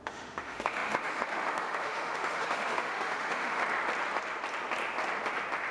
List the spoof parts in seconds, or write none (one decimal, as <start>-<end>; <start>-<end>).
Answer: 0.0-3.6